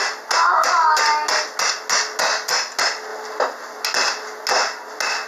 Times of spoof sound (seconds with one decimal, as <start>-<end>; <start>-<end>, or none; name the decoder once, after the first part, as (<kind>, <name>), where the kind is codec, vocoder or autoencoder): none